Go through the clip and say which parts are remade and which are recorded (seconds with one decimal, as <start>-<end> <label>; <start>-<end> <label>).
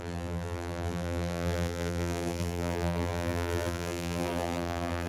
0.0-5.1 remade